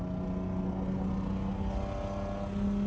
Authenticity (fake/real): real